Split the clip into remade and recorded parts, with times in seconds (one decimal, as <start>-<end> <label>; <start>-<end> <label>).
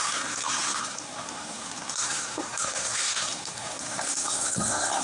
0.0-5.0 remade